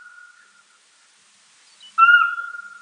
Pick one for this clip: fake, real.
real